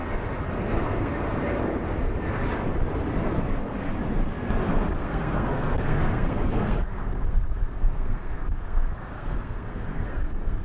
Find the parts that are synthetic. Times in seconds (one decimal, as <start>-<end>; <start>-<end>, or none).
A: 0.6-1.1; 3.5-3.9; 4.7-10.6

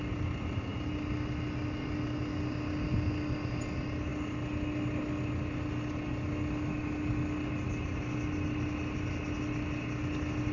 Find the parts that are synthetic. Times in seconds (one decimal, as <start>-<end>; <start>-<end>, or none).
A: none